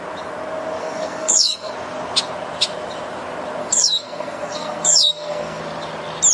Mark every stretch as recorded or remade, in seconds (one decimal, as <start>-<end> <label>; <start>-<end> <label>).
0.0-0.8 recorded; 0.8-1.7 remade; 1.7-3.6 recorded; 3.6-5.6 remade; 5.6-6.3 recorded